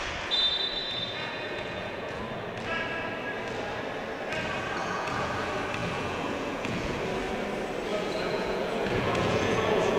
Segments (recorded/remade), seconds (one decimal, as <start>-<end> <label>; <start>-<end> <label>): 0.0-0.8 recorded; 0.8-2.2 remade; 2.2-4.8 recorded; 4.8-5.3 remade; 5.3-5.8 recorded; 5.8-7.0 remade; 7.0-7.9 recorded; 7.9-10.0 remade